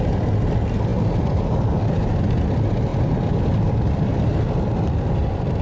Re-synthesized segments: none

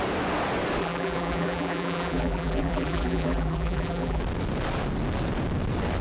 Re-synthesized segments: 0.8-4.2 (vocoder, BigVGAN v2)

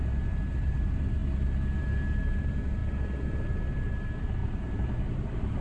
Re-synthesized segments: 0.0-1.2 (vocoder, BigVGAN v2); 1.8-5.6

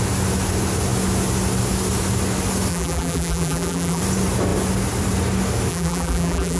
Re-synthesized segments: 2.7-4.0 (vocoder, BigVGAN v2); 5.7-6.6

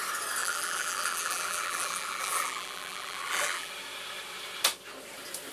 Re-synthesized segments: 0.4-3.7 (vocoder, BigVGAN v2)